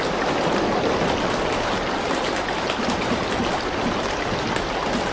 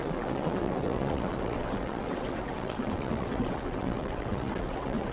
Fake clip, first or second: second